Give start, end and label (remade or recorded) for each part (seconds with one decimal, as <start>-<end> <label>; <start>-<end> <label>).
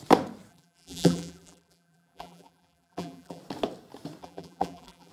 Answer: 0.0-0.5 recorded; 0.5-3.4 remade; 3.4-4.2 recorded; 4.2-5.1 remade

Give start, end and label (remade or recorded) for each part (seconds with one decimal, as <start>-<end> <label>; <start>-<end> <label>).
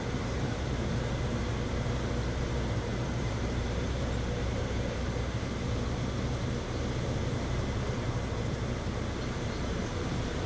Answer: 0.0-1.5 remade; 1.5-2.4 recorded; 2.4-10.5 remade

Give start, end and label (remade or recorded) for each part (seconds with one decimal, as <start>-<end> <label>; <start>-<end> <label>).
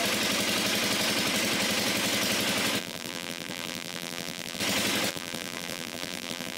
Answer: 0.0-2.8 recorded; 2.8-4.6 remade; 4.6-5.1 recorded; 5.1-6.6 remade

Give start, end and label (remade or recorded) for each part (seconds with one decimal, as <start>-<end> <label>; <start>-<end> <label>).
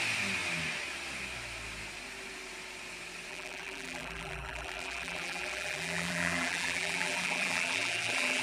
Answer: 0.0-3.3 recorded; 3.3-8.4 remade